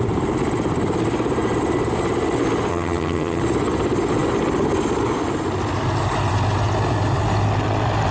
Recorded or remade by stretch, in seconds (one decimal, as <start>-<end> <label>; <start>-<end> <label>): 0.0-2.7 recorded; 2.7-3.4 remade; 3.4-8.1 recorded